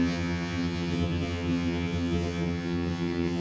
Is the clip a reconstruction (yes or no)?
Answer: yes